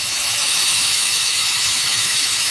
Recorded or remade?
remade